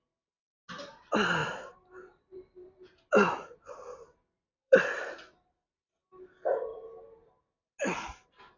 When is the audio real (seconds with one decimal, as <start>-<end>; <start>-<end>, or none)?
0.0-1.4; 5.0-6.7; 7.4-8.6